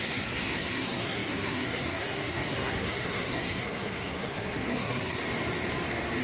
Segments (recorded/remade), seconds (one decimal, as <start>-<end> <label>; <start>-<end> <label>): 0.0-5.2 remade; 5.2-6.2 recorded